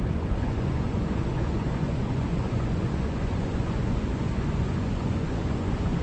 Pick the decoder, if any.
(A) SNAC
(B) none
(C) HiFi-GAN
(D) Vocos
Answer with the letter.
D